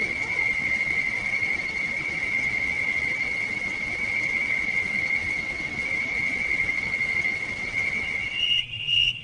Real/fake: fake